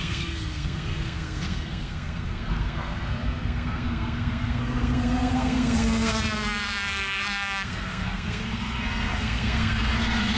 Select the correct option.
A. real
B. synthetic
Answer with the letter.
B